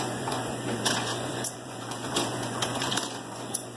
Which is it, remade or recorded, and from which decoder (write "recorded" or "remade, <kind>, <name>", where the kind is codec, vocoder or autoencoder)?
remade, vocoder, Vocos